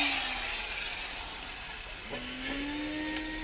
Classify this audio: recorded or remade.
recorded